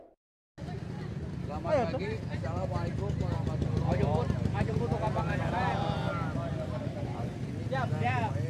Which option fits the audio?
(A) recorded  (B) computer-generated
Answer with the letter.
A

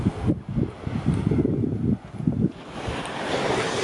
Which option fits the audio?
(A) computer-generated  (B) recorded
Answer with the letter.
B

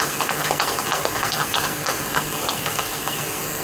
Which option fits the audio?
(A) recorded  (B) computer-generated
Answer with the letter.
B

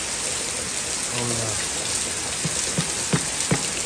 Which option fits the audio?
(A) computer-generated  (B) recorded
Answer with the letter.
B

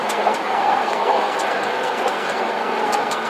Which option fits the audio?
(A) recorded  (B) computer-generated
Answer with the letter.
B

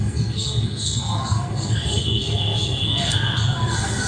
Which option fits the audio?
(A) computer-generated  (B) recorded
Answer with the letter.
A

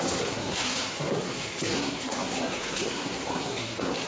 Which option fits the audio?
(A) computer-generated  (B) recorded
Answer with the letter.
A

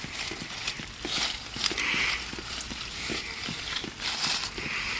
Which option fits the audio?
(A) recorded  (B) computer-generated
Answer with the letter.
A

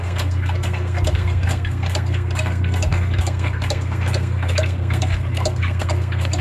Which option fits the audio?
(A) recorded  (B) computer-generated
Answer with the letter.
B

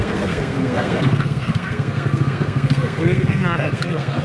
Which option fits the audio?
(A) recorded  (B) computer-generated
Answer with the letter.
B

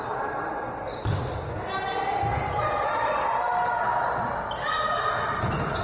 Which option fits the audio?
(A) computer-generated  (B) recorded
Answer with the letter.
B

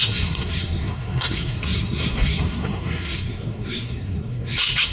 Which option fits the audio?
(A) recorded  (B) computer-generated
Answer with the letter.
B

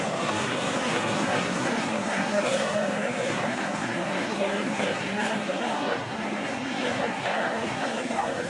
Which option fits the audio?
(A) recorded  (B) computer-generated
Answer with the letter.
B